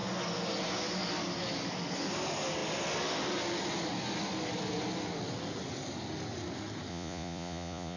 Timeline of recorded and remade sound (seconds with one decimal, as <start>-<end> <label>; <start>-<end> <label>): 0.0-6.9 recorded; 6.9-8.0 remade